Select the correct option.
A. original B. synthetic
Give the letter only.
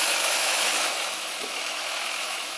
B